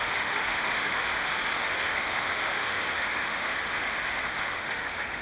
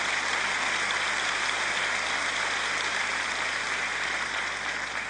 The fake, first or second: first